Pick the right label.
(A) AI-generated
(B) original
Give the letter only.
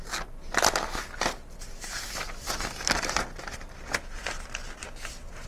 B